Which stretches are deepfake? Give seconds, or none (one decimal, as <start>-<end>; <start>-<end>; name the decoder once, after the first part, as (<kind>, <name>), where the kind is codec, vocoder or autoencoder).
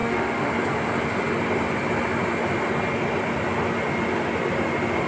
0.0-0.5 (autoencoder, DAC-VAE)